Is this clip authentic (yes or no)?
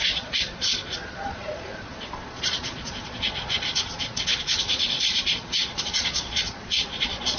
no